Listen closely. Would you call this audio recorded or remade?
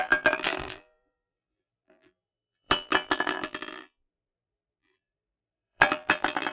remade